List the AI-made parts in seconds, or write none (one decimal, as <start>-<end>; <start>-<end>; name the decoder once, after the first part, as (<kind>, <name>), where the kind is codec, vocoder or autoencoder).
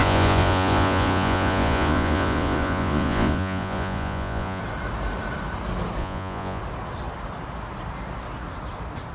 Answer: 0.0-4.6 (vocoder, Vocos); 6.0-6.6